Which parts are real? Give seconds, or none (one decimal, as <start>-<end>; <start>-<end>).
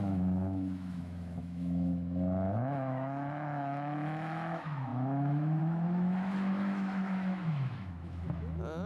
none